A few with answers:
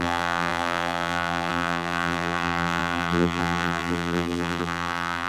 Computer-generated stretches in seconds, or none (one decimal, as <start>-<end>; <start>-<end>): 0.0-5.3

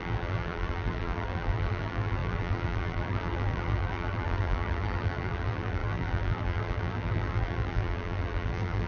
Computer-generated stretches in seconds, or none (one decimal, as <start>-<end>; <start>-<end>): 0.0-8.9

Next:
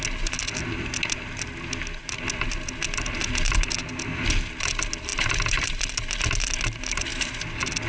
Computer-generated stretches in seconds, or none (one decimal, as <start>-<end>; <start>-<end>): 5.1-5.9

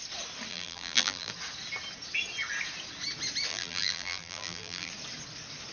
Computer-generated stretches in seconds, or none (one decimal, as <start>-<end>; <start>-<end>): 0.5-1.3; 3.5-4.9

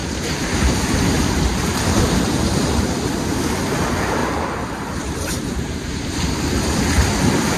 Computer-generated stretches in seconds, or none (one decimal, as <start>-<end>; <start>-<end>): 0.0-2.0; 4.2-7.6

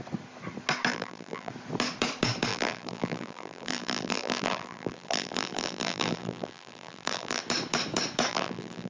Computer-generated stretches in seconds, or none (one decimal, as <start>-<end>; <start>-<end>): 0.9-1.5; 2.5-7.4; 8.3-8.9

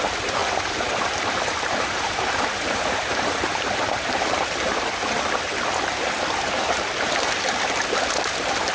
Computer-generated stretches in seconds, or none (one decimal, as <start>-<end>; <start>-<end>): 0.4-4.6